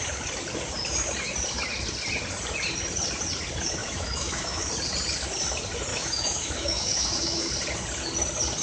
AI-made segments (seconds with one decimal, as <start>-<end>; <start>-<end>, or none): 3.8-4.7; 5.9-7.5